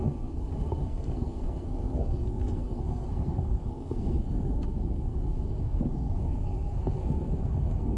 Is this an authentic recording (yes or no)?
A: no